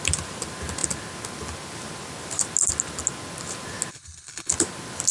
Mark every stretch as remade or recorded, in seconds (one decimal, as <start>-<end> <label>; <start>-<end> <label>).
0.0-3.9 recorded; 3.9-4.5 remade; 4.5-5.1 recorded

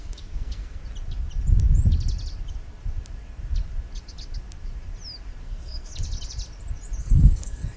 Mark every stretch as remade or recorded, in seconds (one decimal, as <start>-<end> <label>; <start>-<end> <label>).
0.0-0.8 remade; 0.8-5.4 recorded; 5.4-5.9 remade; 5.9-7.0 recorded; 7.0-7.8 remade